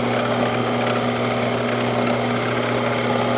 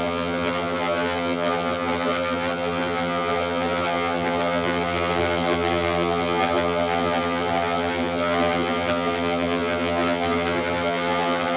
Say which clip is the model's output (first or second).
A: second